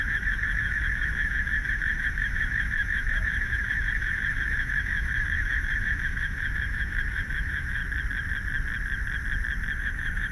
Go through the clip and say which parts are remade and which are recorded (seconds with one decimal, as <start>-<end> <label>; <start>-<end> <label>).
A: 0.0-7.8 remade; 7.8-9.8 recorded; 9.8-10.3 remade